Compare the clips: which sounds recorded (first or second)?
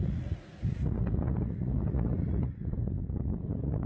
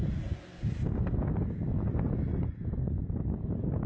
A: second